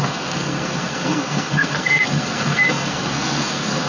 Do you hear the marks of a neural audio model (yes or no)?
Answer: yes